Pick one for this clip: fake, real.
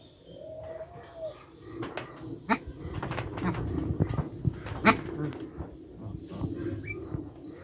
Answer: real